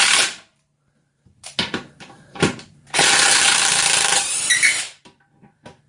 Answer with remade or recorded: remade